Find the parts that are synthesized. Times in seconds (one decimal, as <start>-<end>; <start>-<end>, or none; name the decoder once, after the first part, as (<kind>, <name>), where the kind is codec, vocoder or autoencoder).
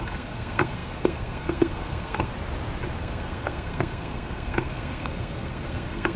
0.0-2.3 (codec, SNAC); 3.0-6.2